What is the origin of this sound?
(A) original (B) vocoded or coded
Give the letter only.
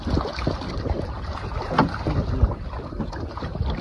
A